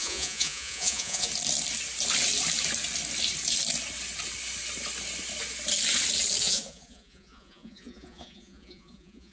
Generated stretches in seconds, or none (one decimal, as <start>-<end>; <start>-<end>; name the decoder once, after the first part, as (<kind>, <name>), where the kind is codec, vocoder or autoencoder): 0.0-1.3 (vocoder, Vocos); 6.4-9.3